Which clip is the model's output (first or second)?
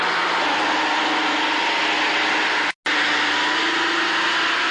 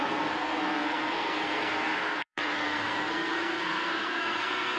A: second